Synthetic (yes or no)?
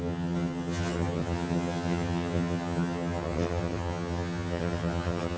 yes